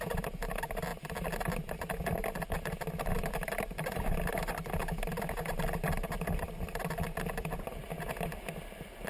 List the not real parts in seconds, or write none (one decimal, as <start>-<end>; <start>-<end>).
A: none